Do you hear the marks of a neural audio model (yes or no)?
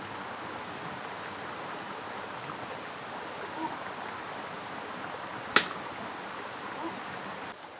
no